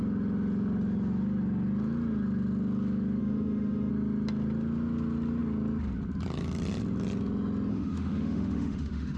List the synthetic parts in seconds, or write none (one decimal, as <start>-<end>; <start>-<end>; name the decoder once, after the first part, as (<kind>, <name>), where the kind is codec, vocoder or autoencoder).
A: 3.2-3.9 (autoencoder, DAC-VAE); 7.7-9.2